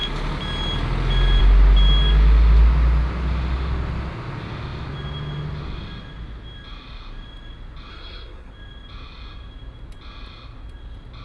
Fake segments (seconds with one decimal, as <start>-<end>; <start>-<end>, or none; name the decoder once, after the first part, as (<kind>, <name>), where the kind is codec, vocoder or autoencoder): 7.9-8.5 (codec, SNAC)